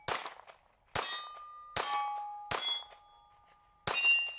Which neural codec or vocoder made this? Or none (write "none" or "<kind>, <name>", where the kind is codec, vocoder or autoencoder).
none